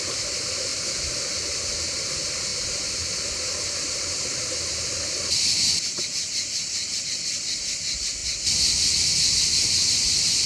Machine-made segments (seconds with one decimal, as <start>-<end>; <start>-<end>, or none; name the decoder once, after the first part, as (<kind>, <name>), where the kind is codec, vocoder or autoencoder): none